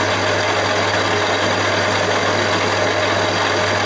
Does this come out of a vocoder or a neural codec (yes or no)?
no